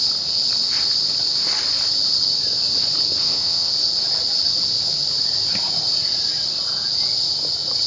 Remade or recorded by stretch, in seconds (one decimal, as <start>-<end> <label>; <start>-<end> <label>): 0.0-3.2 recorded; 3.2-3.7 remade; 3.7-7.9 recorded